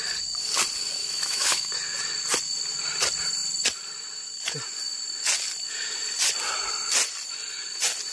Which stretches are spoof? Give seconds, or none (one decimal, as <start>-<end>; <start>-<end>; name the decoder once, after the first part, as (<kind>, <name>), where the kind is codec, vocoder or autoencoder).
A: 1.0-1.7 (autoencoder, DAC-VAE)